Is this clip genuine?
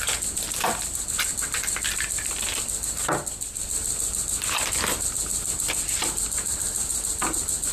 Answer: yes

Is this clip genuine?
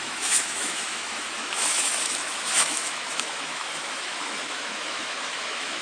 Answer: no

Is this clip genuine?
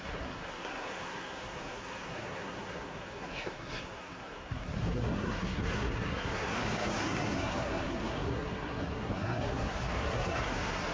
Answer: no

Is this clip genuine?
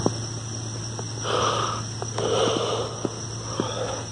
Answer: yes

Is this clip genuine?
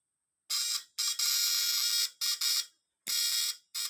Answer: yes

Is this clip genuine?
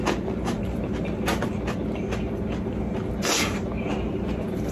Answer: yes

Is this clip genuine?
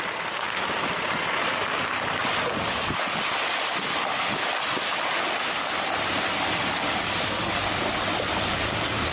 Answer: yes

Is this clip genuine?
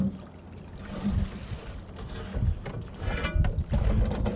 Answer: yes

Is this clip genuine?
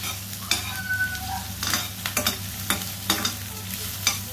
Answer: yes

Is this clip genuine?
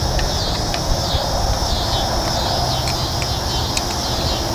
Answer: yes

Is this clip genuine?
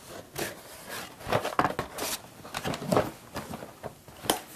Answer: yes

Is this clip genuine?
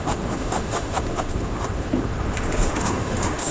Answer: no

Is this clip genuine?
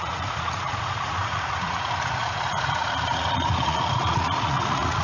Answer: no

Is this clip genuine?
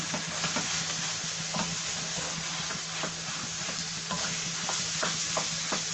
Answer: yes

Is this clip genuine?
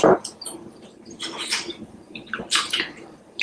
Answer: no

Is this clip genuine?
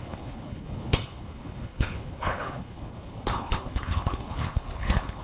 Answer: no